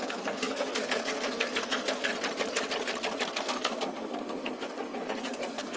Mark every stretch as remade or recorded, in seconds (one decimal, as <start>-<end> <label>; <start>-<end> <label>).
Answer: 0.0-2.1 remade; 2.1-3.4 recorded; 3.4-5.8 remade